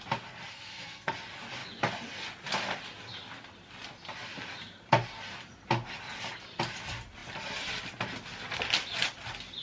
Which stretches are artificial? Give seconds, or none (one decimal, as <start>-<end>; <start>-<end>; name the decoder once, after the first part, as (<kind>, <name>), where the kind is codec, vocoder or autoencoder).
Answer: 0.5-1.1 (codec, SNAC)